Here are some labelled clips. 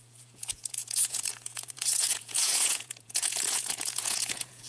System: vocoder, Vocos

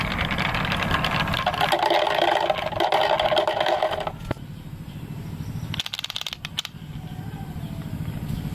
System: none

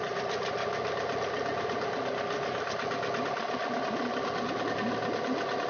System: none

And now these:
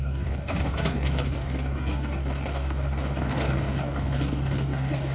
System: codec, DAC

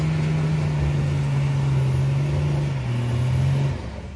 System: none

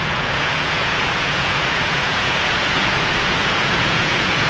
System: vocoder, Vocos